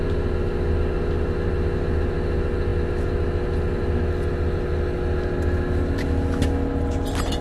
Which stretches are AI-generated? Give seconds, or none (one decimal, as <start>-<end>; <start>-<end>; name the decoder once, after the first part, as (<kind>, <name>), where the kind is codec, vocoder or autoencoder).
none